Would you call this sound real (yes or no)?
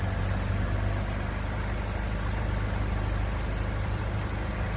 yes